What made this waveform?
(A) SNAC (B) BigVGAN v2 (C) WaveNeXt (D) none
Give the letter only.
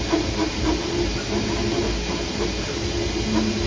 D